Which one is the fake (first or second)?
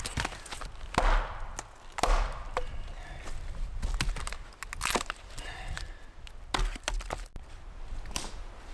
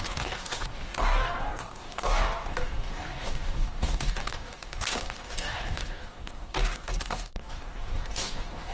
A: second